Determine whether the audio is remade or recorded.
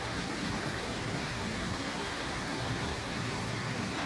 remade